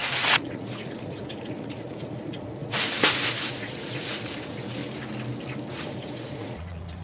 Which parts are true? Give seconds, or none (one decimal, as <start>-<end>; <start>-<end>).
4.8-5.7